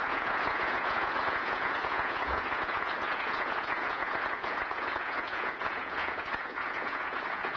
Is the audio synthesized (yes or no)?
yes